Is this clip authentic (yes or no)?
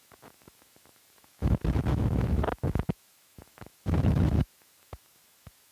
no